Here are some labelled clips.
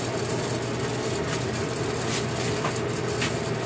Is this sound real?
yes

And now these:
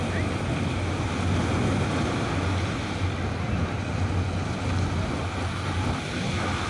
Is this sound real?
yes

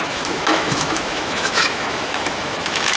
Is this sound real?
no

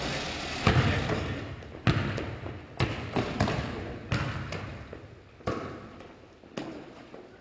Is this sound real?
yes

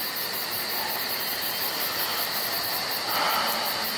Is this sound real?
no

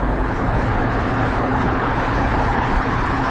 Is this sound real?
no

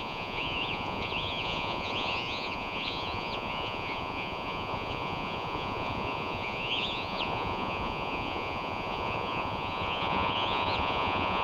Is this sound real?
no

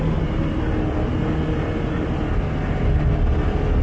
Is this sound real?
yes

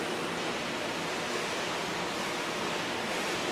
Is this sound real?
yes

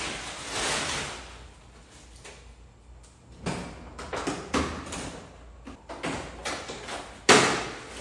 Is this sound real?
yes